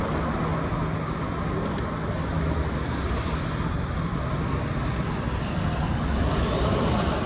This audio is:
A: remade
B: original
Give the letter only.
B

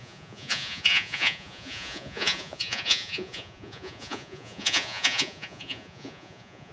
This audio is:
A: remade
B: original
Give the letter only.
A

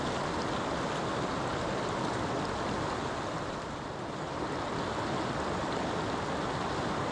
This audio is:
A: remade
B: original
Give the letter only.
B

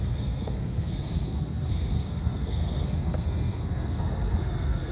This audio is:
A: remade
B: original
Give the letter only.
A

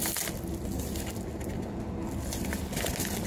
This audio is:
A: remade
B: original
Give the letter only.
B